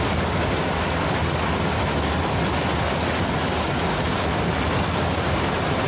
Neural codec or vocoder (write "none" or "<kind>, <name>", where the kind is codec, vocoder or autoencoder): none